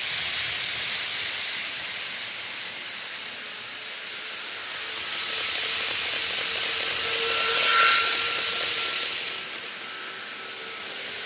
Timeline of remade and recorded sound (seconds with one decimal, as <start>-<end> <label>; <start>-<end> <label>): 0.0-11.3 recorded